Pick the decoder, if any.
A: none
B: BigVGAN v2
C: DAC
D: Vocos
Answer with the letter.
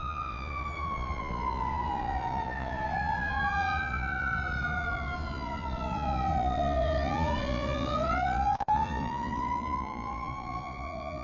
D